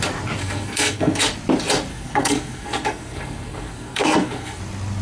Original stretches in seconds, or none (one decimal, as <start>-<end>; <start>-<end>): 0.0-0.4; 1.2-1.9; 4.6-5.0